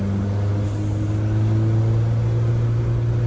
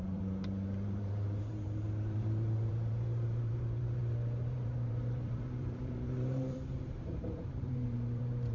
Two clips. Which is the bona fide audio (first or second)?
first